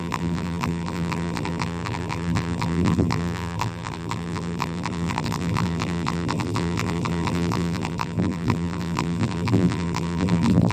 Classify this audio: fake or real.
fake